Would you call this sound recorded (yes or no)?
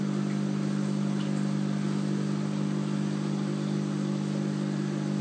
yes